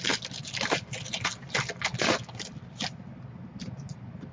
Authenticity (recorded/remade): recorded